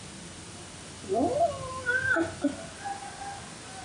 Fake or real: real